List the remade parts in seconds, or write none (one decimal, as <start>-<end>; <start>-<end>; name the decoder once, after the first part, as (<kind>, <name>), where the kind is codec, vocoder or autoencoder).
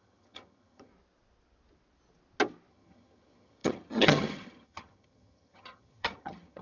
0.0-0.9 (vocoder, HiFi-GAN); 2.7-6.6